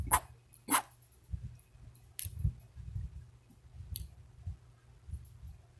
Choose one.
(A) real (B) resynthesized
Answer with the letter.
A